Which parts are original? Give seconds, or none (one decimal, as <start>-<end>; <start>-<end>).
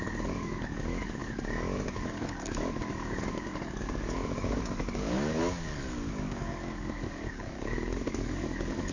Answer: none